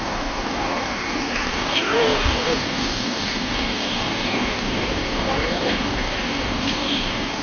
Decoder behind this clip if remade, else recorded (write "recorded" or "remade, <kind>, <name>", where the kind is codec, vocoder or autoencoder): remade, codec, DAC